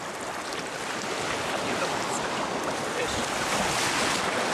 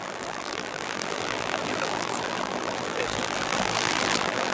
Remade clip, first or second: second